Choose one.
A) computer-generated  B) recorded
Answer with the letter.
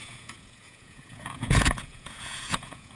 A